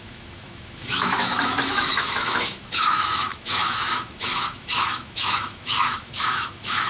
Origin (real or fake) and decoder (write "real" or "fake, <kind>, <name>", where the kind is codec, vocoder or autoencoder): fake, autoencoder, DAC-VAE